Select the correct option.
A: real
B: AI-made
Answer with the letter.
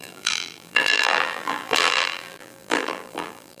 B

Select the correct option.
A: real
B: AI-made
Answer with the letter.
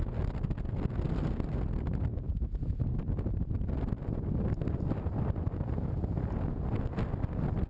A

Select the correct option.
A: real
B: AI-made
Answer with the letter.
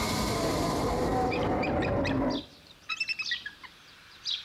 B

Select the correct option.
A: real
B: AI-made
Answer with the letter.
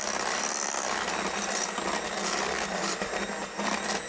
A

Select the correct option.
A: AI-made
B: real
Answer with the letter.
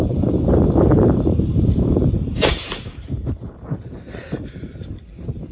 A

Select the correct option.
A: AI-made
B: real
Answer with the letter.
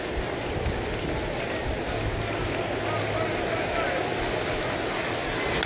B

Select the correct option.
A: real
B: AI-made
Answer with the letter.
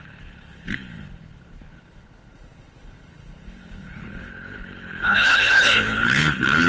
B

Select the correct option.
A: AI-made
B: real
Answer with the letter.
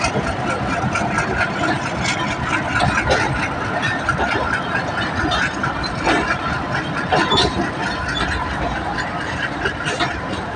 B